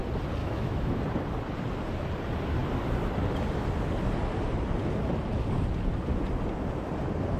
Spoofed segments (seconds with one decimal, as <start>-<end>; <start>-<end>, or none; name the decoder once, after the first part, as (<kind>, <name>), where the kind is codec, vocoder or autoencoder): 0.4-1.0 (autoencoder, DAC-VAE)